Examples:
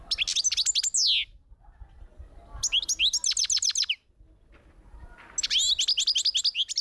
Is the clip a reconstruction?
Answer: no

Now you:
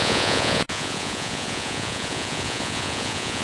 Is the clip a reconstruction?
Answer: yes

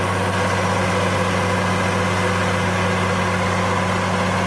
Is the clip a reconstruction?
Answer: no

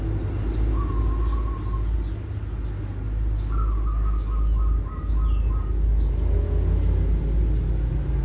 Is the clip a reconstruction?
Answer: no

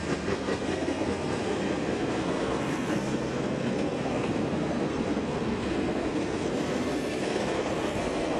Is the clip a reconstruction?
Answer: yes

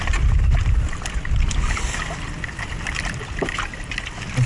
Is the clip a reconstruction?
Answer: no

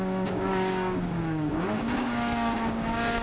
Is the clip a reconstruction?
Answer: yes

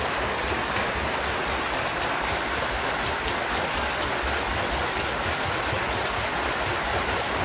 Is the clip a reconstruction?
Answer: no